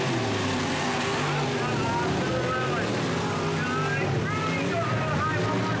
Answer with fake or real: real